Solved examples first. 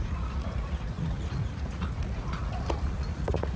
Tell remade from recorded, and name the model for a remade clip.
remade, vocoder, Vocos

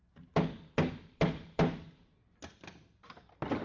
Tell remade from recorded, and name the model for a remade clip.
recorded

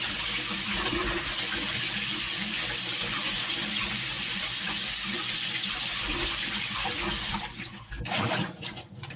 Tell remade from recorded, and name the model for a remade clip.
remade, vocoder, Vocos